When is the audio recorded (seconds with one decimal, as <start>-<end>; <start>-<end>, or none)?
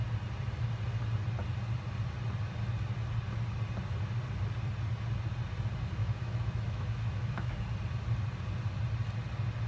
0.0-6.0; 7.5-9.7